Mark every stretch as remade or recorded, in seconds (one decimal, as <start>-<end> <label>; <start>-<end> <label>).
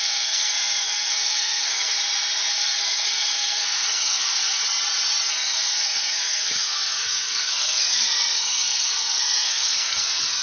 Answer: 0.0-1.9 remade; 1.9-2.5 recorded; 2.5-4.6 remade; 4.6-5.3 recorded; 5.3-10.4 remade